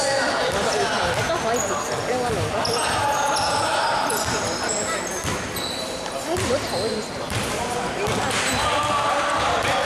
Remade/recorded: recorded